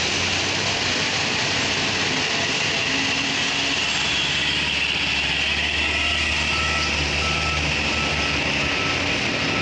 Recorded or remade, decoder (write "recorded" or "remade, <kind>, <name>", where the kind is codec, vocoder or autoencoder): recorded